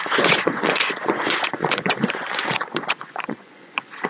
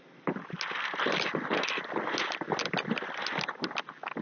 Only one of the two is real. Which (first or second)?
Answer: second